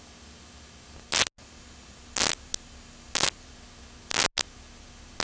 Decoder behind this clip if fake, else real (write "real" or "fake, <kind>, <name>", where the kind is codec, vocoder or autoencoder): real